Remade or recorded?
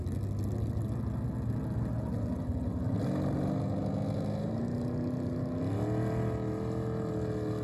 recorded